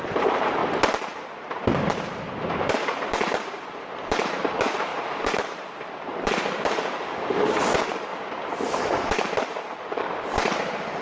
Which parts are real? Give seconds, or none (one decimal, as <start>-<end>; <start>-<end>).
0.6-2.5; 8.1-8.8